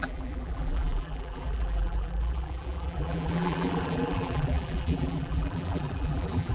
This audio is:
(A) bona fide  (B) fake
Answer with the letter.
B